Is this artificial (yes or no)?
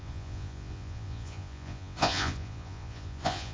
yes